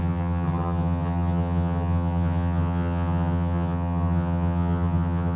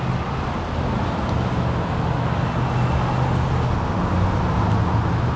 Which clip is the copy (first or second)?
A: first